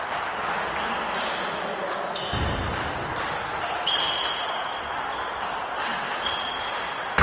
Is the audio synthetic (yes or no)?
no